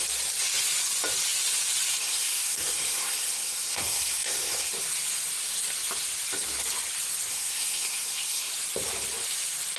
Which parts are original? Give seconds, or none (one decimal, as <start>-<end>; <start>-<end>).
0.0-2.0; 4.7-7.3; 8.5-9.8